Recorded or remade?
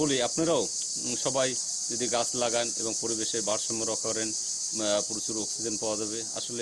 recorded